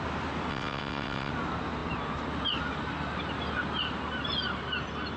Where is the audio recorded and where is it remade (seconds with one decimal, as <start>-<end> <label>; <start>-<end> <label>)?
0.0-0.5 recorded; 0.5-1.3 remade; 1.3-5.2 recorded